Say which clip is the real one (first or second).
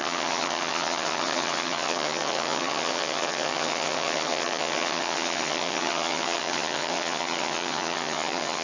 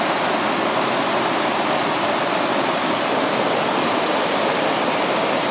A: second